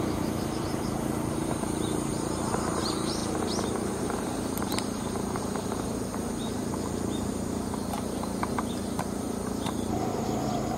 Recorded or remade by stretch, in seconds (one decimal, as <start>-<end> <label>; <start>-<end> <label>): 0.0-3.2 remade; 3.2-3.8 recorded; 3.8-6.6 remade; 6.6-7.3 recorded; 7.3-10.8 remade